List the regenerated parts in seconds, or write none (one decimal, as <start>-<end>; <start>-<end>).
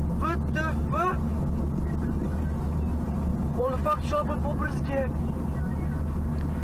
none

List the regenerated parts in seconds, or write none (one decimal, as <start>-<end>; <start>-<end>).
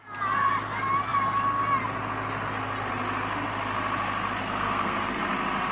4.4-5.2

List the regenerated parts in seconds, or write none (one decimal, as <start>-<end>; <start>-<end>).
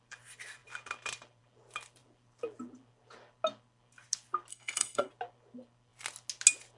4.5-5.1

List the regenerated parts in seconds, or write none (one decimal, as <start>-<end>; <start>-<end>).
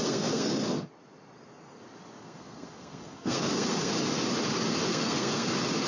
0.0-0.9; 2.2-3.9; 4.9-5.5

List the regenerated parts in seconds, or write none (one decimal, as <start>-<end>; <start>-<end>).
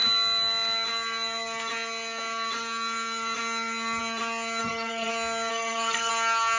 4.6-5.1; 5.5-6.1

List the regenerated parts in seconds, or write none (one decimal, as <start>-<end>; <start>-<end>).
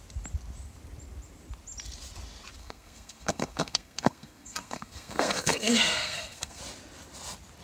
2.6-6.6